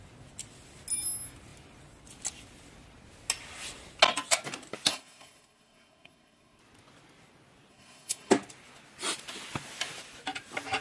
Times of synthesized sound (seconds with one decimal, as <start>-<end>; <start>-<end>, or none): 4.9-6.6; 7.7-8.3